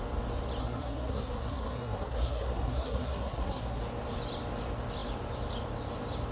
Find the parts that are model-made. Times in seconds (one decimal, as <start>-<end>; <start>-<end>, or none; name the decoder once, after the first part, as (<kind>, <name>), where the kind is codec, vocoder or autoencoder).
0.6-3.8 (codec, SNAC)